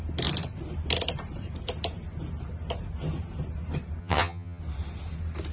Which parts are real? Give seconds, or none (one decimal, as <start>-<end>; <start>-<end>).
0.0-4.0; 4.6-5.5